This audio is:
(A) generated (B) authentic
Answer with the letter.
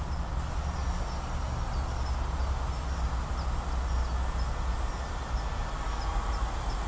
B